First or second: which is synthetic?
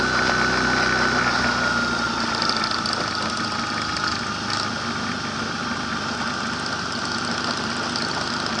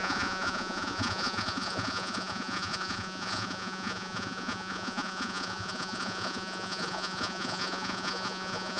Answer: second